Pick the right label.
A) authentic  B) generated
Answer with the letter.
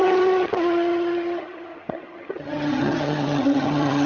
B